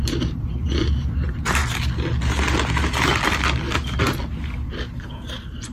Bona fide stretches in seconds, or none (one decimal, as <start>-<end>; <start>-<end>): 1.6-5.0

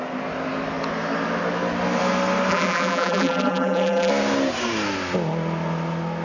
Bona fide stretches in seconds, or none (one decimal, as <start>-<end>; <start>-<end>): 0.0-2.5; 4.1-6.2

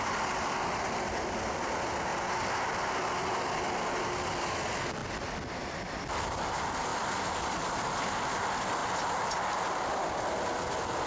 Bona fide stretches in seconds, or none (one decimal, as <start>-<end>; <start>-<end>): 0.0-11.1

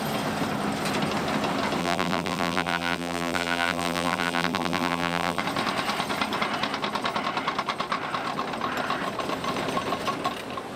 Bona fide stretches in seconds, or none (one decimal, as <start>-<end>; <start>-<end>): 0.0-1.8; 5.4-10.8

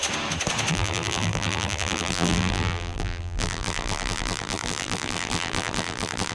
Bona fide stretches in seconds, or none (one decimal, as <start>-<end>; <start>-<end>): 0.0-0.7

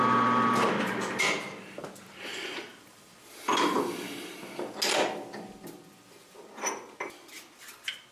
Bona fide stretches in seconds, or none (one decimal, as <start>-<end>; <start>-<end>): 0.0-1.8; 3.8-8.1

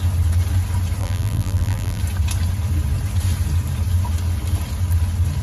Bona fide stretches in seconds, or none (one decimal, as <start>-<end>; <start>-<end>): 0.0-1.0; 2.0-5.4